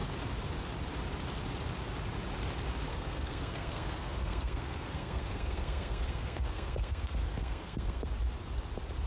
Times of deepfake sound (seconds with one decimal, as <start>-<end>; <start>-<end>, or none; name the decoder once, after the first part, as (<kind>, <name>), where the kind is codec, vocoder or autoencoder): 2.9-8.1 (codec, SNAC)